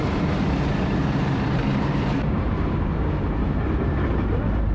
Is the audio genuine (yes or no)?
no